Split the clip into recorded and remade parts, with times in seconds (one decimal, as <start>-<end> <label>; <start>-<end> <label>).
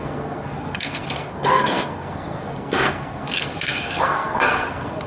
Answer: 0.0-5.1 remade